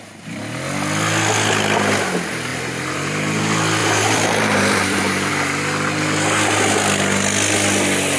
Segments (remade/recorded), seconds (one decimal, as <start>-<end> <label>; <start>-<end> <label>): 0.0-2.5 recorded; 2.5-3.4 remade; 3.4-3.8 recorded; 3.8-5.3 remade; 5.3-8.2 recorded